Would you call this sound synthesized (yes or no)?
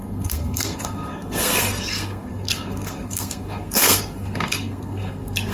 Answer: yes